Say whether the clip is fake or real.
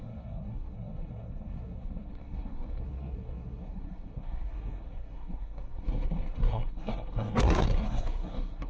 fake